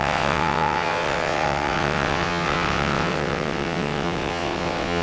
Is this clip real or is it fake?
fake